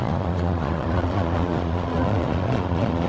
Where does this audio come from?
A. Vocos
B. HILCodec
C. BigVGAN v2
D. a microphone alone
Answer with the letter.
A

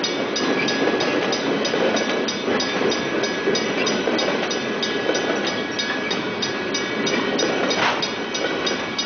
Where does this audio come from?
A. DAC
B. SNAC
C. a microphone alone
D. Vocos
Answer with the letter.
C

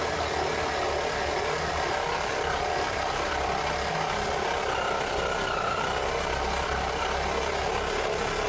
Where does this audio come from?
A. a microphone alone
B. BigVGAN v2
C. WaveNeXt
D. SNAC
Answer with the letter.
A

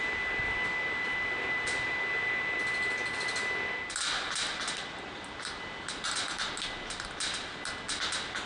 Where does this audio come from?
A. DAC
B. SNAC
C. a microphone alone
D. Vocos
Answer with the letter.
C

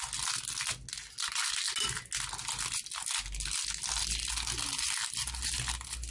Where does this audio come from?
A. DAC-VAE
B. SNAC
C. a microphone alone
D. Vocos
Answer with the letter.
C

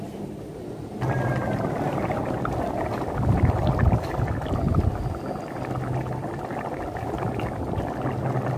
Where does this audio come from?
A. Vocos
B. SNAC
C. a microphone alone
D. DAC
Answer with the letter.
C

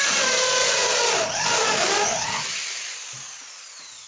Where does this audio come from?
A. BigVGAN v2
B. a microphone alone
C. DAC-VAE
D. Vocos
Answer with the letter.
B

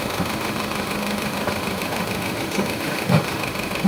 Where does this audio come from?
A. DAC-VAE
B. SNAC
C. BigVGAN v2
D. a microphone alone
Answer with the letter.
A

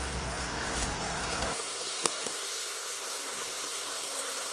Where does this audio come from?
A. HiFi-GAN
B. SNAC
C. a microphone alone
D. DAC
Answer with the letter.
B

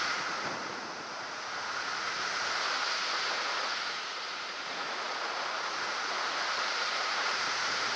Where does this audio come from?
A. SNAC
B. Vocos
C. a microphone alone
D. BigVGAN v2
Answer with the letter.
B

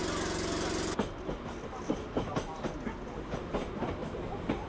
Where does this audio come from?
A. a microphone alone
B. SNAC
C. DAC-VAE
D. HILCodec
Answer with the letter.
A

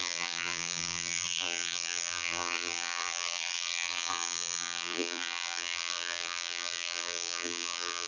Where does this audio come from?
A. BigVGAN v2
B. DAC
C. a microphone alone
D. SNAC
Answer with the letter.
A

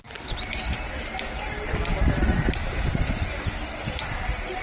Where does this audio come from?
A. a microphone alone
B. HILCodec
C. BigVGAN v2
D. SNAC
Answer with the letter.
A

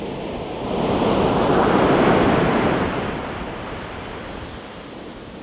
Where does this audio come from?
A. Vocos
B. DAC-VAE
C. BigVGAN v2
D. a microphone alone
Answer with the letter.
D